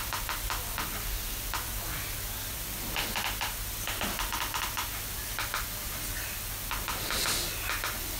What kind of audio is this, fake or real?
real